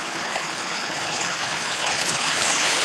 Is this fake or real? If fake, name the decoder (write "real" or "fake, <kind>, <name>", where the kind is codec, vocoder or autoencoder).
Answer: fake, codec, HILCodec